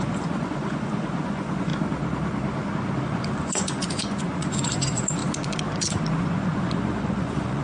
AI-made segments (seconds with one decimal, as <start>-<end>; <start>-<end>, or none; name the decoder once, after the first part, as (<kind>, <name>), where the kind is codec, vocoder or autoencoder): 0.0-1.7 (vocoder, Vocos); 3.0-5.2; 6.2-7.6